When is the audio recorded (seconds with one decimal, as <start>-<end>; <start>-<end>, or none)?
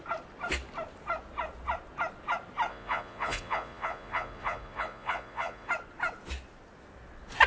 0.0-2.7; 5.7-7.5